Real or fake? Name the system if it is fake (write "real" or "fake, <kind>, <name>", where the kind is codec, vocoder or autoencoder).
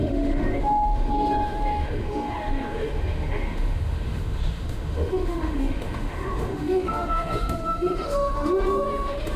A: fake, autoencoder, DAC-VAE